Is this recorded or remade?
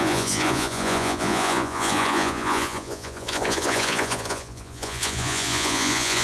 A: remade